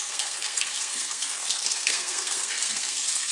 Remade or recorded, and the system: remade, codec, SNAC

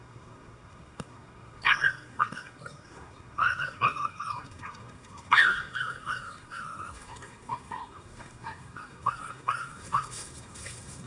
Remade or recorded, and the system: remade, codec, SNAC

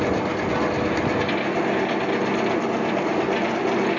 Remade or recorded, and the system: recorded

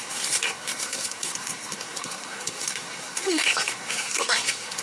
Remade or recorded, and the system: remade, codec, SNAC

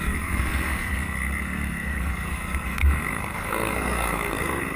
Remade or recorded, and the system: remade, codec, SNAC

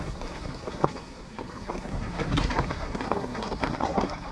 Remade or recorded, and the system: remade, codec, SNAC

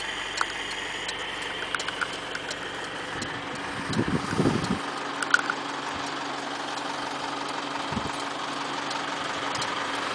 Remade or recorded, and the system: recorded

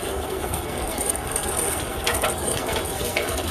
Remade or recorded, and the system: remade, codec, SNAC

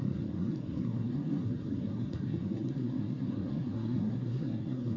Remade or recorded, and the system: remade, codec, SNAC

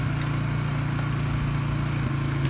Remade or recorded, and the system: recorded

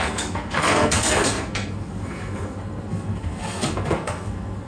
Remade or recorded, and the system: remade, codec, SNAC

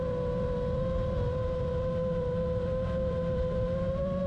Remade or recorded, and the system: recorded